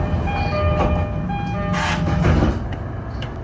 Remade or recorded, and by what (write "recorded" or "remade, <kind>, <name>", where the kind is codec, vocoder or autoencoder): recorded